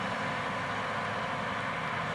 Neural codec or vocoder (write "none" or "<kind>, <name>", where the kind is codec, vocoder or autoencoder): none